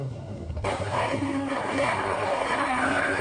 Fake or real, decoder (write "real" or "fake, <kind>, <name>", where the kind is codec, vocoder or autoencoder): fake, codec, SNAC